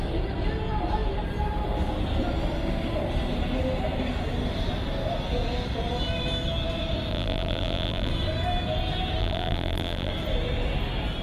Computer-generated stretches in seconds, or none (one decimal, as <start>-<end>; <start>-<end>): 7.1-8.1; 9.2-10.1